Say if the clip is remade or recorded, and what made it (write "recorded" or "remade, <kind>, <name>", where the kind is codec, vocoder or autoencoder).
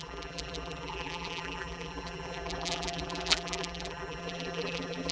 remade, vocoder, BigVGAN v2